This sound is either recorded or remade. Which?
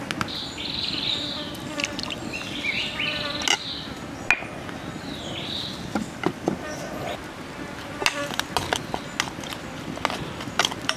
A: recorded